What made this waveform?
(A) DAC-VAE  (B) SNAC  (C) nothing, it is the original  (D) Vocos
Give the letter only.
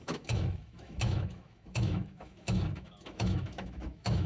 A